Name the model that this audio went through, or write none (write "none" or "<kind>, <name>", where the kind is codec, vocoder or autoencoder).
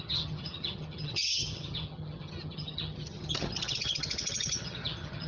vocoder, HiFi-GAN